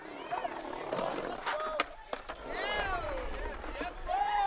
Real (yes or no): yes